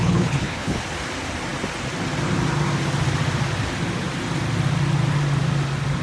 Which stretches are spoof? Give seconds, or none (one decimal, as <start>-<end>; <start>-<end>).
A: 0.0-0.8